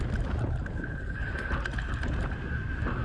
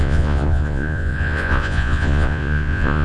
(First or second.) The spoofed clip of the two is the second